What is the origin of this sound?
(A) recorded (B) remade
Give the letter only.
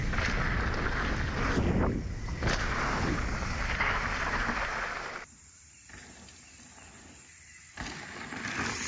A